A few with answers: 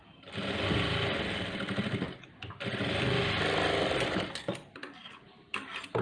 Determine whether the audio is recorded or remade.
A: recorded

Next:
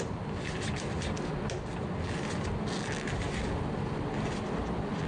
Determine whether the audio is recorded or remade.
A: recorded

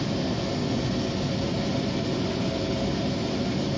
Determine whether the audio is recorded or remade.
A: recorded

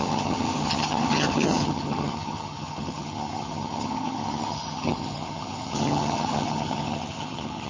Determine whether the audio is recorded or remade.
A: remade